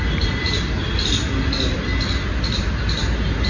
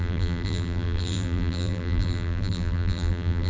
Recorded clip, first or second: first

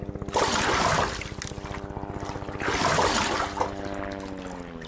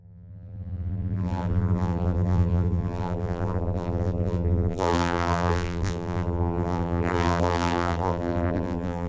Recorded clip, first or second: first